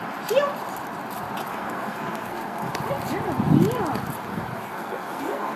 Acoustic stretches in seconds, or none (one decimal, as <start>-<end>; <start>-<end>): 0.0-1.5; 2.7-4.3